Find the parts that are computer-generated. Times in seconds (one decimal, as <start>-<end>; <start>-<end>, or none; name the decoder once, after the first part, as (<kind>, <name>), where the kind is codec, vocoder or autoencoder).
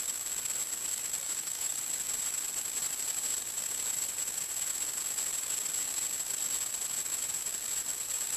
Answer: 1.2-1.8 (codec, DAC)